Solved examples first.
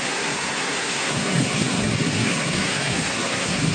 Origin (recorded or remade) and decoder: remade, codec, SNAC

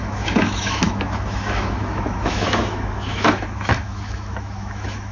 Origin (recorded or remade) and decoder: remade, autoencoder, DAC-VAE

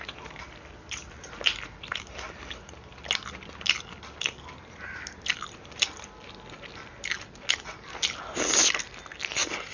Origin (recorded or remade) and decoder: recorded